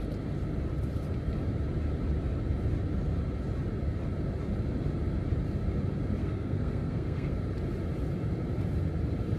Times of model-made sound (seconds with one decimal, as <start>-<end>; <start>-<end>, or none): 6.2-7.4